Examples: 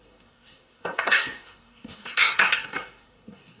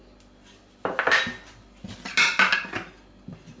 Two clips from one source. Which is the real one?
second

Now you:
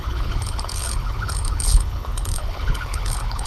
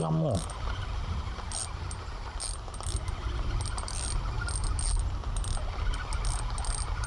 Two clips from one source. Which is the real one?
second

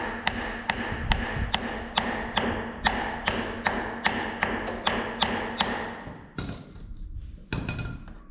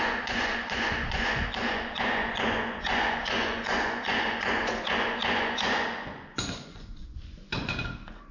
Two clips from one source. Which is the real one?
first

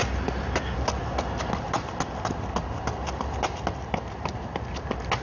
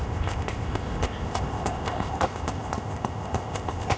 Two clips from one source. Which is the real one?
first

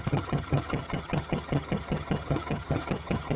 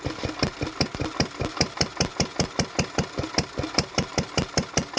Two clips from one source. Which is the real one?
second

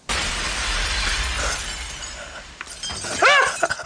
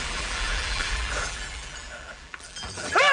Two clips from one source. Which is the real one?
first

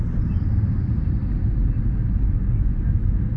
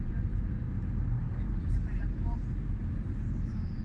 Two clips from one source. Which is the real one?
second